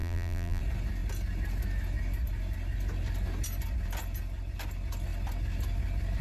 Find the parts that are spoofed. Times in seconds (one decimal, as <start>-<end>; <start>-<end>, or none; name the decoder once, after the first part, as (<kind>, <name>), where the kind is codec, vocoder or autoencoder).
0.0-0.6 (vocoder, BigVGAN v2)